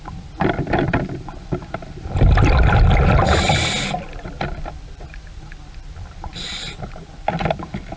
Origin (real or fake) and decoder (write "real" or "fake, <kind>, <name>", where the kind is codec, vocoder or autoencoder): fake, vocoder, BigVGAN v2